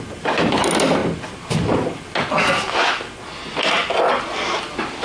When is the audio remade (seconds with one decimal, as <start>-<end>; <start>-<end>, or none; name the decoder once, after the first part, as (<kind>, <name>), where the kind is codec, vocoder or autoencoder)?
none

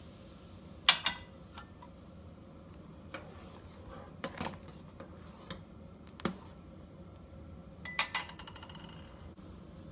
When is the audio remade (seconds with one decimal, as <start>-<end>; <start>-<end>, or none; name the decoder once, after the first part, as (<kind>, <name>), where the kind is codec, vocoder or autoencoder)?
none

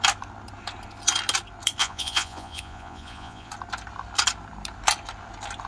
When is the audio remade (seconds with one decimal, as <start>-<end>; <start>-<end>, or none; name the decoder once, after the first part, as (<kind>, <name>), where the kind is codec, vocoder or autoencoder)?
1.8-3.5 (vocoder, Vocos)